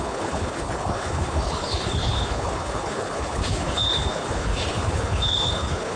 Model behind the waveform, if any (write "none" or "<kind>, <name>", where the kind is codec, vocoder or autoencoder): codec, HILCodec